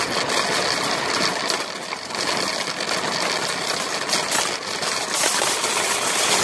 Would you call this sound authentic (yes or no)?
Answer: yes